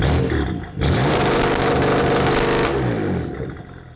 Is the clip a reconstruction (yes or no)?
no